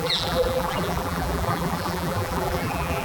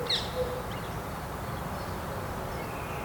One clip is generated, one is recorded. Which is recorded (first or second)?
second